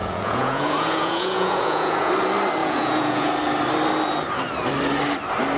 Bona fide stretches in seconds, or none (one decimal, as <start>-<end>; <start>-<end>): 2.1-2.6; 3.3-5.6